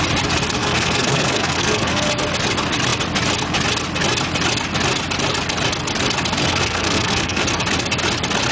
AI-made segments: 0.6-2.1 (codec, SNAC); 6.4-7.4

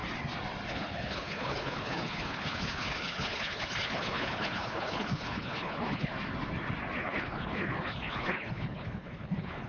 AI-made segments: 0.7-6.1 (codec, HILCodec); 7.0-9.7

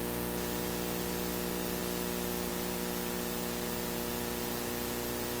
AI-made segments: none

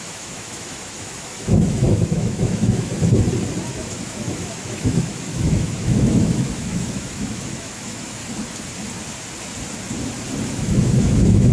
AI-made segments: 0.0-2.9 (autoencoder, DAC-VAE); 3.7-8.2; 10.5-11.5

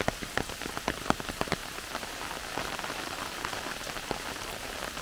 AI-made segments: none

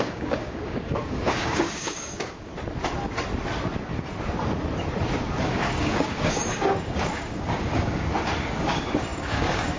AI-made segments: 0.0-2.5 (codec, DAC); 5.4-8.1; 8.6-9.8